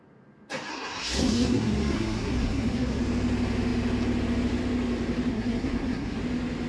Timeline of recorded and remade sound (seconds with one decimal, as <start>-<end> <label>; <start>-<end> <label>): 0.0-0.7 recorded; 0.7-3.0 remade; 3.0-5.3 recorded; 5.3-6.2 remade; 6.2-6.7 recorded